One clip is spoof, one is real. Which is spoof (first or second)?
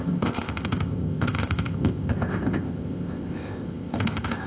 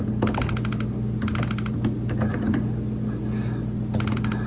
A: first